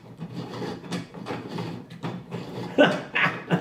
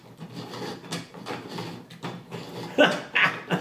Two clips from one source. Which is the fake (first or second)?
first